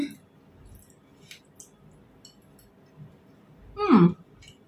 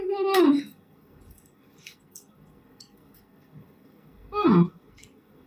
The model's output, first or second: second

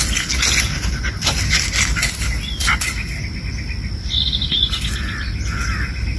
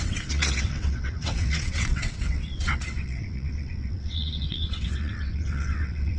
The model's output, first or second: second